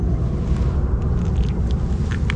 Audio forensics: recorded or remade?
recorded